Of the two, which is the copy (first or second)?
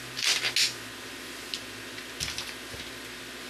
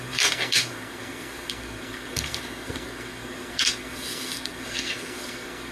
second